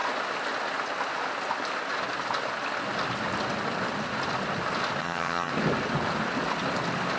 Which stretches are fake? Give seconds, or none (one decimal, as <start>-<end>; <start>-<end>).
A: 5.0-5.5